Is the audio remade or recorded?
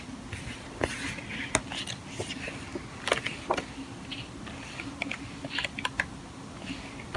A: recorded